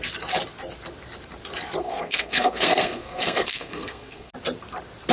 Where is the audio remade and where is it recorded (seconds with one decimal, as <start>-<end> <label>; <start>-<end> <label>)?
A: 0.0-1.8 recorded; 1.8-4.3 remade; 4.3-5.1 recorded